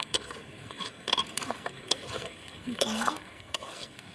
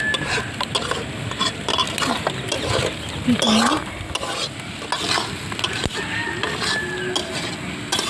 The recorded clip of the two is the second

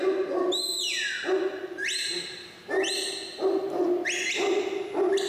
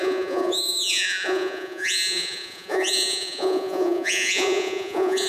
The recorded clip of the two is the first